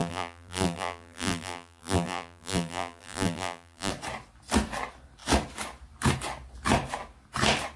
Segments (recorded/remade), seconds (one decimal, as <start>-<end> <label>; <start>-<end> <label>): 0.0-3.9 remade; 3.9-7.8 recorded